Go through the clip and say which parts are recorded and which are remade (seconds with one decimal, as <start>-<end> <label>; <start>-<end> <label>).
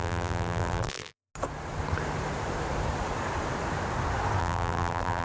0.0-1.3 remade; 1.3-4.4 recorded; 4.4-5.2 remade